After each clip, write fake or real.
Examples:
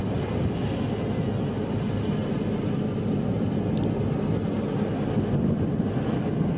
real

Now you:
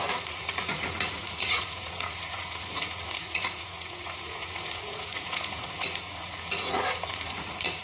fake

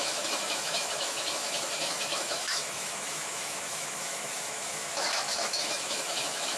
fake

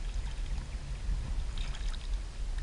real